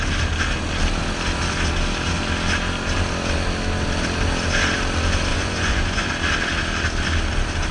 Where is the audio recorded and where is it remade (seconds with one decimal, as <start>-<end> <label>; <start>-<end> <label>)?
0.0-5.3 recorded; 5.3-6.1 remade; 6.1-7.7 recorded